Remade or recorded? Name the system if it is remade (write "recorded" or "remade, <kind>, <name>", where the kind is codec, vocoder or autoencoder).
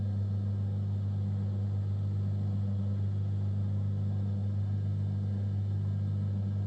recorded